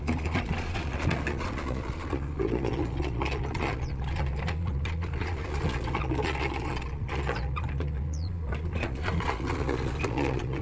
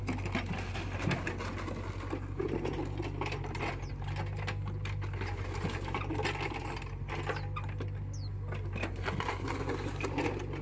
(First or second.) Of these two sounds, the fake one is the first